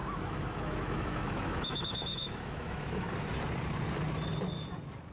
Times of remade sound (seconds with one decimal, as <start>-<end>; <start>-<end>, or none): 0.0-3.1